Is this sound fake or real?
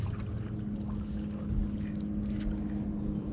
real